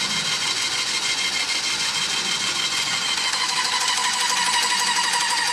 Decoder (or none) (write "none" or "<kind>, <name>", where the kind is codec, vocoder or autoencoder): vocoder, Vocos